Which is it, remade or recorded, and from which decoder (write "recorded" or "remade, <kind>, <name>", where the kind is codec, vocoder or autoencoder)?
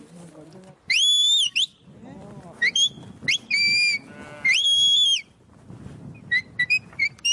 recorded